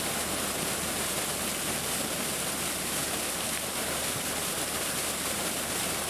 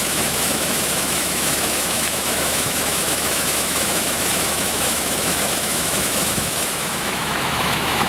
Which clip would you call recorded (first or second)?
first